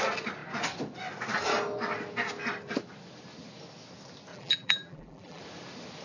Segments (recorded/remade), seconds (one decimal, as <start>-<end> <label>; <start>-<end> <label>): 0.0-4.3 recorded; 4.3-5.4 remade; 5.4-6.0 recorded